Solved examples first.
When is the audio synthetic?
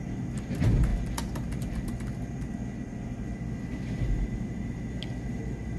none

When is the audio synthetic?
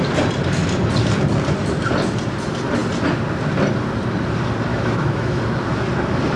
4.7-5.4 (autoencoder, DAC-VAE)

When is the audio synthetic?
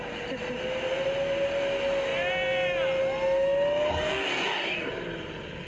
3.9-4.9 (codec, DAC)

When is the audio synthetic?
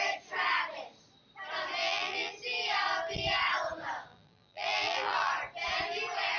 1.8-2.3 (vocoder, BigVGAN v2); 4.1-5.3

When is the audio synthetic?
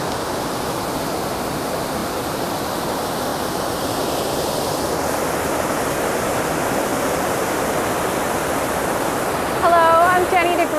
none